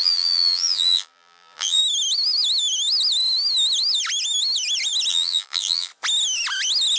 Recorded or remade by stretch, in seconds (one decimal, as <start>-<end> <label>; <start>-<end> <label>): 0.0-1.8 remade; 1.8-5.1 recorded; 5.1-5.9 remade; 5.9-7.0 recorded

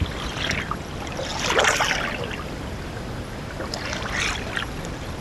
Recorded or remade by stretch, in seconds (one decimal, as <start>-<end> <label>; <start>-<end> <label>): 0.0-5.2 recorded

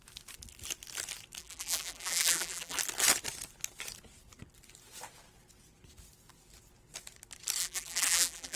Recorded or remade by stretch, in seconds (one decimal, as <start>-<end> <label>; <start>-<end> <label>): 0.0-1.4 recorded; 1.4-2.8 remade; 2.8-7.6 recorded; 7.6-8.6 remade

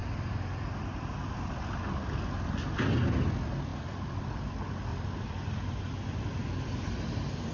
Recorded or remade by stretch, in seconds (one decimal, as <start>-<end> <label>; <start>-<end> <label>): 0.0-2.6 recorded; 2.6-3.2 remade; 3.2-3.7 recorded; 3.7-4.2 remade; 4.2-4.9 recorded; 4.9-6.8 remade; 6.8-7.5 recorded

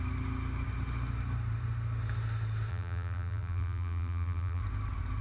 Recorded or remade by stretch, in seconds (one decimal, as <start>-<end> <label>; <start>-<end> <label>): 0.0-2.7 recorded; 2.7-4.6 remade; 4.6-5.2 recorded

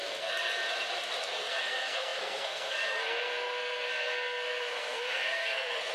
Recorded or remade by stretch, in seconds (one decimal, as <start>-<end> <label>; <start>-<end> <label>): 0.0-0.6 remade; 0.6-1.2 recorded; 1.2-5.9 remade